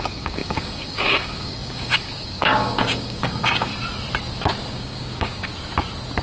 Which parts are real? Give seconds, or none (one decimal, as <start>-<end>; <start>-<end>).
3.7-4.7; 5.5-6.2